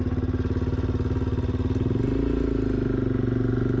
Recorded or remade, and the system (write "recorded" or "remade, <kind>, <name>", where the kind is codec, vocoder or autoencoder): recorded